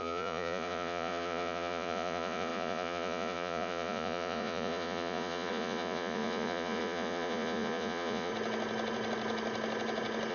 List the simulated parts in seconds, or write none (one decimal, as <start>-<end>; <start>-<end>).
0.0-8.3